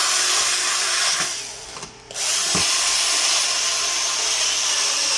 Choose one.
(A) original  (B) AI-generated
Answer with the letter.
A